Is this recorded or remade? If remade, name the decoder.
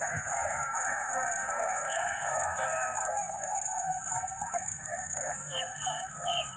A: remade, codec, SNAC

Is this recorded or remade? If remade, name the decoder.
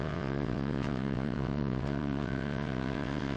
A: remade, vocoder, WaveNeXt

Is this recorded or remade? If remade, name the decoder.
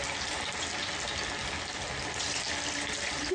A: recorded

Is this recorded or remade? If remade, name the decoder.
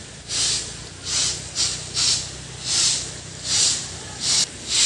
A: recorded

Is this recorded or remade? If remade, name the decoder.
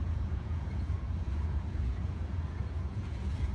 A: remade, vocoder, Vocos